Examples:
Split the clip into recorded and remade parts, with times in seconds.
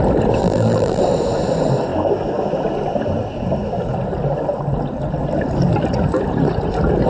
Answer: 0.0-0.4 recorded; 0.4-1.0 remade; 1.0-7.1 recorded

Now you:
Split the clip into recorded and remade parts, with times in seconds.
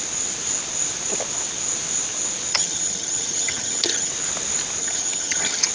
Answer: 0.0-2.5 recorded; 2.5-4.1 remade; 4.1-4.8 recorded; 4.8-5.7 remade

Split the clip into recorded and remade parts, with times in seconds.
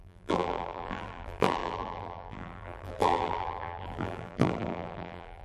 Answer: 0.0-5.4 remade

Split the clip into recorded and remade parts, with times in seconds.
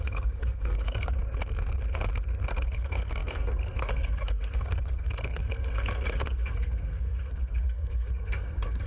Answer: 0.0-1.2 remade; 1.2-2.5 recorded; 2.5-8.9 remade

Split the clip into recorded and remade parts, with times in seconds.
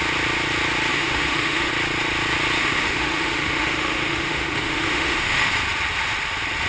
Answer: 0.0-0.9 recorded; 0.9-1.7 remade; 1.7-2.6 recorded; 2.6-5.5 remade; 5.5-6.7 recorded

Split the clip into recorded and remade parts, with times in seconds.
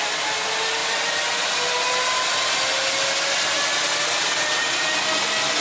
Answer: 0.0-5.6 recorded